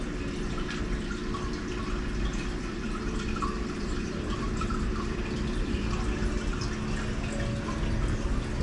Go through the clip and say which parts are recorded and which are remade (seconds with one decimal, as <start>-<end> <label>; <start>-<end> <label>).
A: 0.0-2.3 recorded; 2.3-6.6 remade; 6.6-8.6 recorded